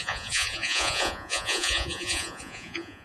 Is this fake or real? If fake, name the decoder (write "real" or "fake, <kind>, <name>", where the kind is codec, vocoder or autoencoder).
fake, vocoder, Vocos